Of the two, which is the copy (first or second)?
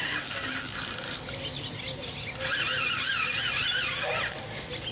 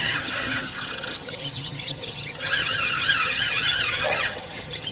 second